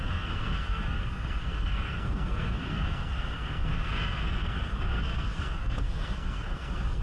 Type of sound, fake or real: fake